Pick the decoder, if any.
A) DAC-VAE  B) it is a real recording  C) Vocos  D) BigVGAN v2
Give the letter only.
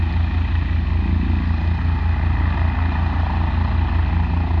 B